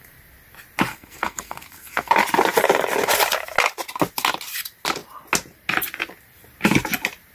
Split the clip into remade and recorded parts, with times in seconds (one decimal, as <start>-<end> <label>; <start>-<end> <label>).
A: 0.0-0.9 recorded; 0.9-2.1 remade; 2.1-7.3 recorded